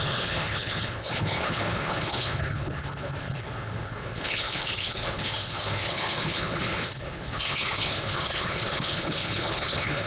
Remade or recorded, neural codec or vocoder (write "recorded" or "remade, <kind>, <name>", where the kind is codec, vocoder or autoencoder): remade, codec, HILCodec